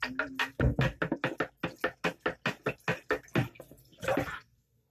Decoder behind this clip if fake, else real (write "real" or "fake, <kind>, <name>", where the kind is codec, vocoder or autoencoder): real